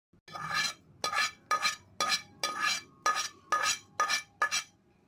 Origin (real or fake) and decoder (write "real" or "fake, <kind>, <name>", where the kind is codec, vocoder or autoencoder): real